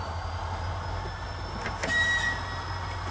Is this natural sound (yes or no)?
yes